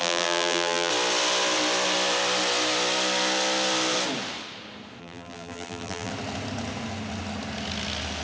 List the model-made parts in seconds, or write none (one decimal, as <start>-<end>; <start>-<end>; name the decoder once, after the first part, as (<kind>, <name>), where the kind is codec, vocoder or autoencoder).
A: 0.0-0.9 (vocoder, BigVGAN v2); 5.0-6.1